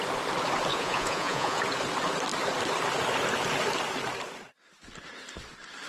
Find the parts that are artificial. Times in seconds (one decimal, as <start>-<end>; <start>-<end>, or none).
0.7-1.6